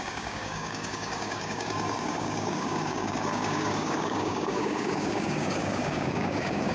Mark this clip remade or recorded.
remade